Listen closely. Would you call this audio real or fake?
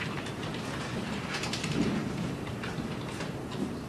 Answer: fake